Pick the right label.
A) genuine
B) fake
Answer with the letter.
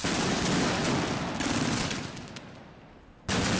A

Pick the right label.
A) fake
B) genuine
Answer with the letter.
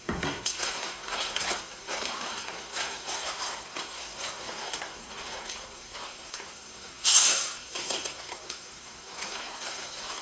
A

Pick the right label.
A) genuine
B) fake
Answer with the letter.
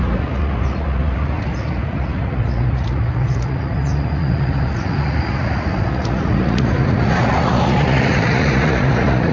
B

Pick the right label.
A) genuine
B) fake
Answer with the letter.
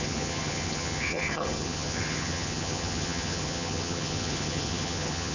B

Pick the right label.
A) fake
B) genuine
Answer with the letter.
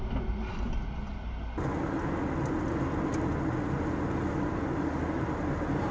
B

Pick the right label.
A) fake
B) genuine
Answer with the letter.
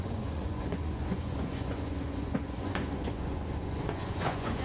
A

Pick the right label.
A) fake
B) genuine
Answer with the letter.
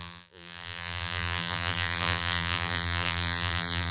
A